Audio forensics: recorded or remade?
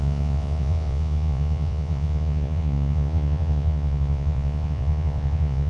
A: remade